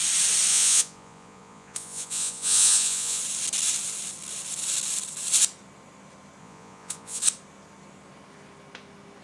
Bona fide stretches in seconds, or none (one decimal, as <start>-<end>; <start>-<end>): 0.0-0.5; 3.2-6.4; 7.2-9.2